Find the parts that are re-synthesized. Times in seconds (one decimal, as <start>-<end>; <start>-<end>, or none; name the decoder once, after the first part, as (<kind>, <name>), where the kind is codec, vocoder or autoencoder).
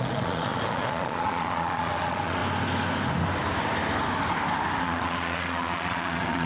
0.0-2.4 (vocoder, Vocos); 4.8-6.5